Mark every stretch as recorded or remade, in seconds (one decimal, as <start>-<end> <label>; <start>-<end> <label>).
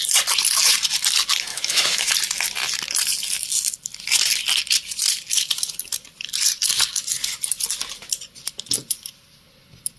0.0-1.5 recorded; 1.5-2.1 remade; 2.1-10.0 recorded